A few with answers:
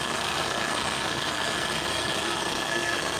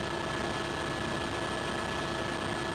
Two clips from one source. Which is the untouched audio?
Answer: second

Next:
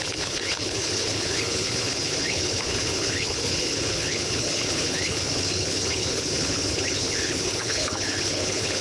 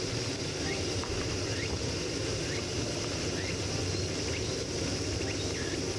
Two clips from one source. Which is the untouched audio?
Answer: second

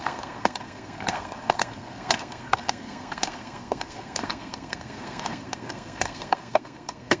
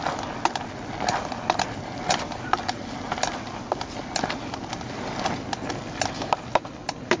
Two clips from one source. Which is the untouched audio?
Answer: second